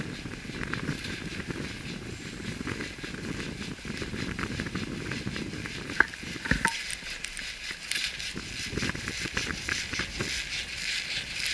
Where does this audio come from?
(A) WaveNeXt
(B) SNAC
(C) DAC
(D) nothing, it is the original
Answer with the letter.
D